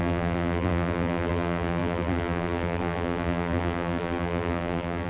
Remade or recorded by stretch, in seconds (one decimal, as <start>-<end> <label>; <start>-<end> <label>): 0.0-5.1 remade